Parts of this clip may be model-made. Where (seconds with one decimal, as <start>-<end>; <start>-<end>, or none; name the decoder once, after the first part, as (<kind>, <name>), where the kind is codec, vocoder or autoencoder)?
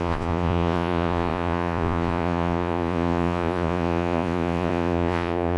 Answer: 0.0-5.6 (vocoder, Vocos)